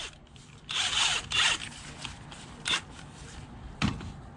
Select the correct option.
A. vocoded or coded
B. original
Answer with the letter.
B